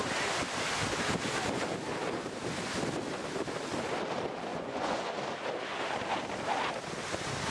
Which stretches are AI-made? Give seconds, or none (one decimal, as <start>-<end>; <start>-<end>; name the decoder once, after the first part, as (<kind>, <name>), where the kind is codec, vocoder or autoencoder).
4.5-5.1 (vocoder, Vocos)